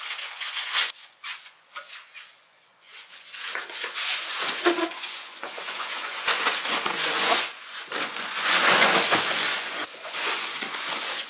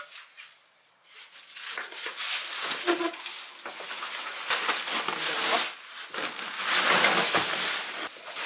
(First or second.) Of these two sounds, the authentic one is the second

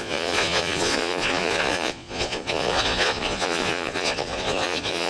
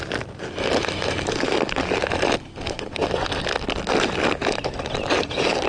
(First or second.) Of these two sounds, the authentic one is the second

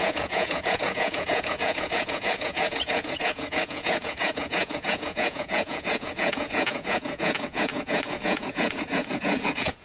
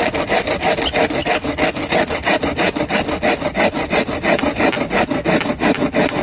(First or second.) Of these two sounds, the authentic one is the second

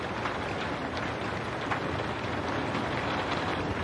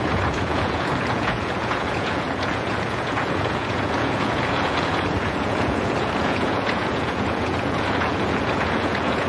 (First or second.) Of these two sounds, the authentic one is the first